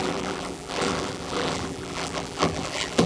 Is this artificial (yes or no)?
yes